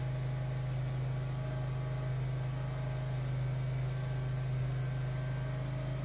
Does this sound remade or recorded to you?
recorded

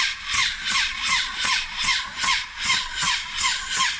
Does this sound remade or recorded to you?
remade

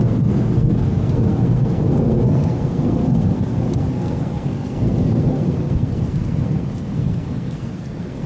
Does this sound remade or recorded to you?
remade